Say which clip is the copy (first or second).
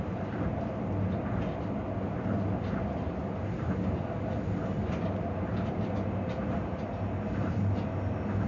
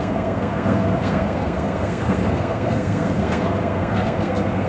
second